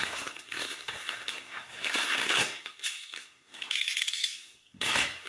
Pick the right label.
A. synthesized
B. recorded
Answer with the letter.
A